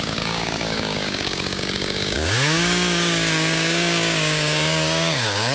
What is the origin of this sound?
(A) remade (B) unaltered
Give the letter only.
A